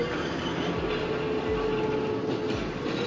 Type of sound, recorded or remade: recorded